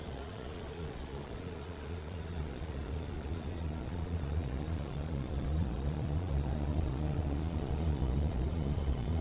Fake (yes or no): yes